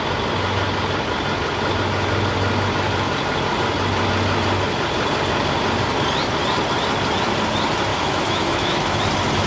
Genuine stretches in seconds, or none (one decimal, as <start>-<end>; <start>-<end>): 0.0-7.9; 9.0-9.5